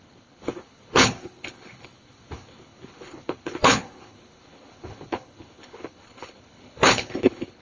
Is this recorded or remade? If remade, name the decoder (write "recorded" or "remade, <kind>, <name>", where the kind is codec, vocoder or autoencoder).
remade, codec, HILCodec